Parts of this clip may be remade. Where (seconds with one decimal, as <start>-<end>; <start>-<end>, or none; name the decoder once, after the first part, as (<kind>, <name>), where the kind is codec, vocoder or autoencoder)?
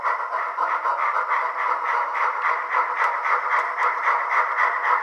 0.0-5.0 (vocoder, BigVGAN v2)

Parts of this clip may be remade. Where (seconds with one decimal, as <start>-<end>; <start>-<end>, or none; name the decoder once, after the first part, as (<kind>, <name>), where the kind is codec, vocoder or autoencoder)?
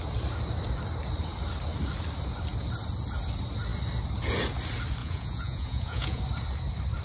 5.0-6.2 (vocoder, Vocos)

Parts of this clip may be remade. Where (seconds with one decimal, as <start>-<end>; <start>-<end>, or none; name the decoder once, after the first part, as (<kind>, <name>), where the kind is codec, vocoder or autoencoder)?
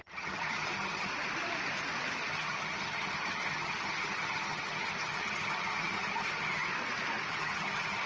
0.0-1.1 (vocoder, HiFi-GAN); 2.3-6.7; 7.3-8.1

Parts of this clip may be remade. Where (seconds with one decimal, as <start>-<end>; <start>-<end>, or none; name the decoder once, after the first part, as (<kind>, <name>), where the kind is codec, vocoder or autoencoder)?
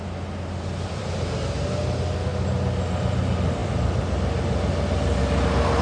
none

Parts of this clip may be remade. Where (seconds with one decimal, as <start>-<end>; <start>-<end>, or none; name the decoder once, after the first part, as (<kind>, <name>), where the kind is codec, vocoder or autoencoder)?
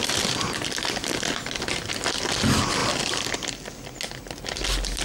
none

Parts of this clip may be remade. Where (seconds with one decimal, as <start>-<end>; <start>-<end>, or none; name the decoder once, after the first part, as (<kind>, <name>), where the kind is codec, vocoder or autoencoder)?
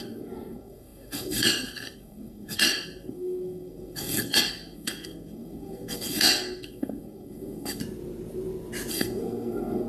0.0-7.8 (codec, SNAC); 8.9-9.9